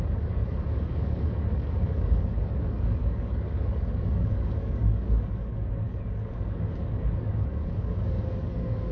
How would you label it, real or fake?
fake